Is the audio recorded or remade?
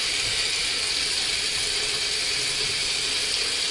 remade